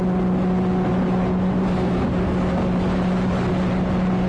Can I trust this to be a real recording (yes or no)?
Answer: yes